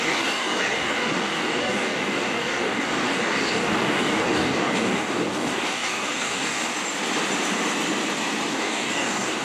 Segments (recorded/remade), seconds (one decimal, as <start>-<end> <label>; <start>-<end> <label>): 0.0-6.7 remade; 6.7-8.5 recorded; 8.5-9.4 remade